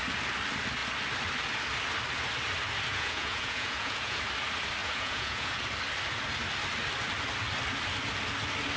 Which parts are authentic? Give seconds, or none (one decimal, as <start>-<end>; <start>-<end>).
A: 0.0-2.9; 4.2-4.8; 5.6-8.8